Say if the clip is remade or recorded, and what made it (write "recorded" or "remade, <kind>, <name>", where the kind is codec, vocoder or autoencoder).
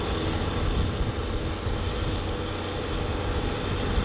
recorded